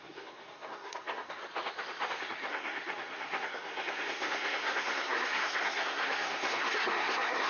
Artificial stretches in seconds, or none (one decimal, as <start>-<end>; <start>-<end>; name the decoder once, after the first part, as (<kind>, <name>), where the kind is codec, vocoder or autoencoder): 0.0-1.4 (codec, SNAC); 2.2-7.5